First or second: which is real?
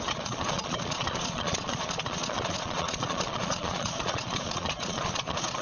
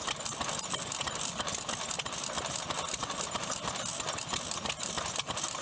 second